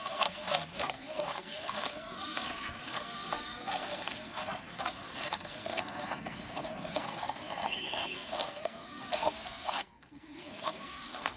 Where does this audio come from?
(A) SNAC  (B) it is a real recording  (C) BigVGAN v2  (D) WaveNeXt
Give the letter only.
A